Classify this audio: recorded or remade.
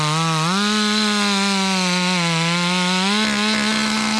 recorded